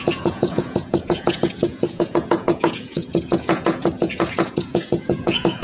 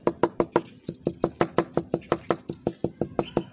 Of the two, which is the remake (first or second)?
first